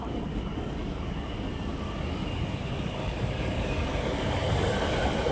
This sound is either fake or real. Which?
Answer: fake